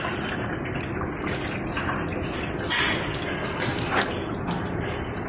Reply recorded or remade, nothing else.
recorded